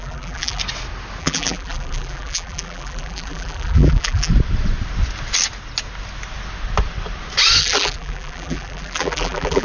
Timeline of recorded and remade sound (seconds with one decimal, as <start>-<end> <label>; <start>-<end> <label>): 0.0-0.6 remade; 0.6-1.2 recorded; 1.2-4.3 remade; 4.3-7.6 recorded; 7.6-9.6 remade